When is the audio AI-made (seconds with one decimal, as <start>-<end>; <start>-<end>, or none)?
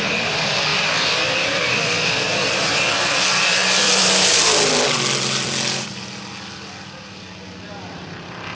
0.0-8.5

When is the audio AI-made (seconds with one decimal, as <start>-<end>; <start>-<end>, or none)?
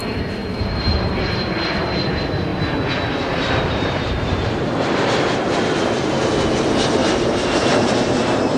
0.0-2.5; 3.2-8.6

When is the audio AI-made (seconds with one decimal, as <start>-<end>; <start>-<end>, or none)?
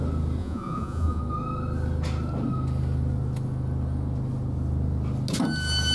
0.4-1.2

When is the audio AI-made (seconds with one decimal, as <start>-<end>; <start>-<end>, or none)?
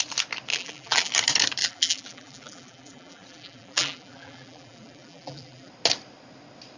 0.5-1.1; 1.6-5.7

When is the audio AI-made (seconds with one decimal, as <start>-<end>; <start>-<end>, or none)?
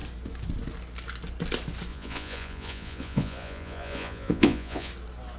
1.9-4.9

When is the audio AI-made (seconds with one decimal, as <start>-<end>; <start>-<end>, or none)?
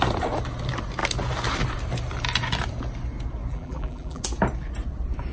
3.5-4.2